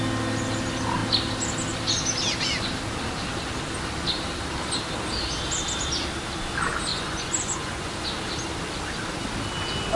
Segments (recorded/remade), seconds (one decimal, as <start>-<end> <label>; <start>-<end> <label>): 0.0-6.9 recorded; 6.9-7.9 remade; 7.9-10.0 recorded